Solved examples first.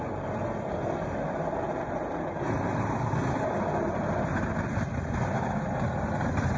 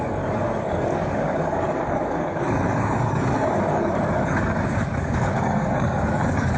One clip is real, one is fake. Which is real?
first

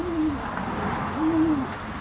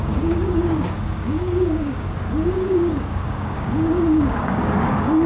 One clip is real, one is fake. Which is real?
first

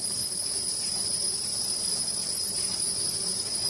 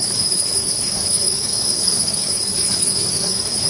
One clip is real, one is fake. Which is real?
first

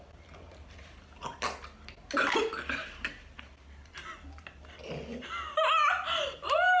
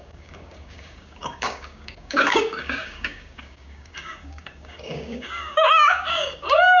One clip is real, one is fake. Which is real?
first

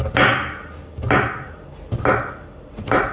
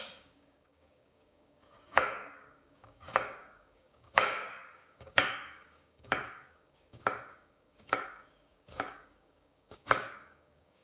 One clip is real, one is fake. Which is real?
first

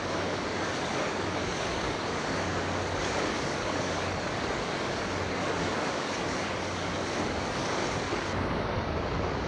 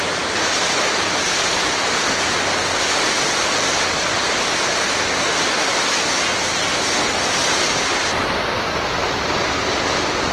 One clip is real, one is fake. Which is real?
second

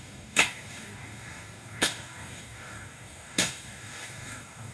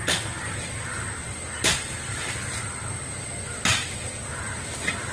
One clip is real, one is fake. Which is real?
second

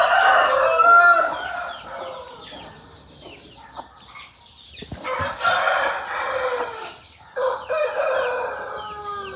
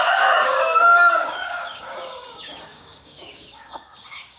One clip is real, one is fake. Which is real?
first